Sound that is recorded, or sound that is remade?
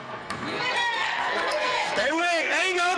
remade